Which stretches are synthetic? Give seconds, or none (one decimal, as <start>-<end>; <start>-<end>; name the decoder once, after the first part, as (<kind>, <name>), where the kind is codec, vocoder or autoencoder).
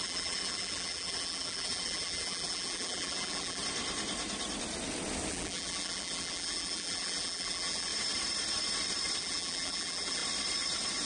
0.0-3.6 (vocoder, BigVGAN v2); 5.3-7.9; 9.2-10.2